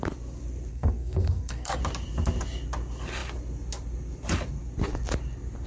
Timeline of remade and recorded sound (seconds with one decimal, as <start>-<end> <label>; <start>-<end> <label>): 0.0-0.7 recorded; 0.7-1.8 remade; 1.8-5.7 recorded